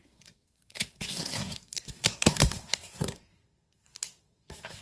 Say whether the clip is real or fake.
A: fake